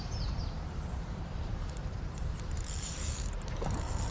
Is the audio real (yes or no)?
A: no